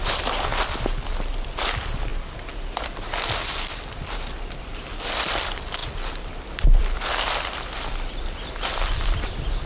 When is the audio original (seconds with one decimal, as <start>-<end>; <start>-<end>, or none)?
0.5-1.3; 2.1-4.6